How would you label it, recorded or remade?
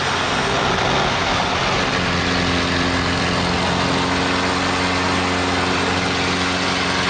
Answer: recorded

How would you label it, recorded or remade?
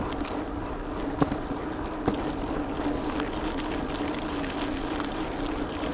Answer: recorded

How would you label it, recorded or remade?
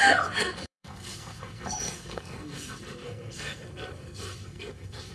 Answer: remade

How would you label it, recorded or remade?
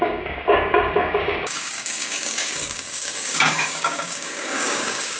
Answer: remade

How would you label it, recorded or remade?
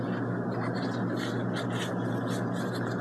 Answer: recorded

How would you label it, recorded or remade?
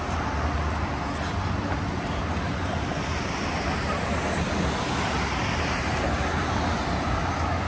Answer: recorded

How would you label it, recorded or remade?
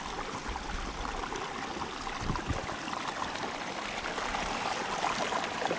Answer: recorded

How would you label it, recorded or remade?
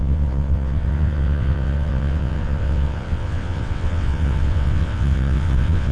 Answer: remade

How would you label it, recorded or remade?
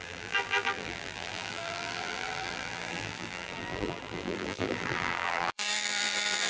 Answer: remade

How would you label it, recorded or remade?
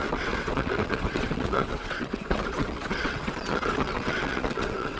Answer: remade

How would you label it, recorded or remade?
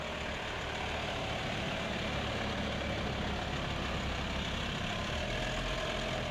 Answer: recorded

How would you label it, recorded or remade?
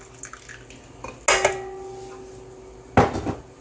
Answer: recorded